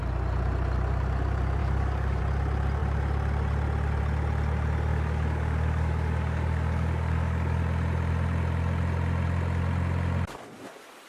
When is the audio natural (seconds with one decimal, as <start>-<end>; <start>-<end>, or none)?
0.0-1.6; 2.2-4.9; 7.6-11.1